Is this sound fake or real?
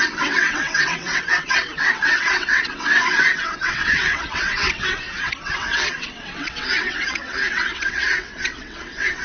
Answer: fake